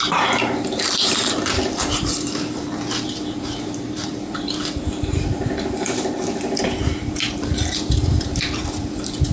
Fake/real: fake